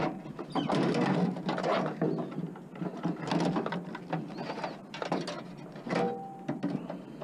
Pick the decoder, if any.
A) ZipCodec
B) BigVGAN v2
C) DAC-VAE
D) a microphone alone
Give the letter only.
D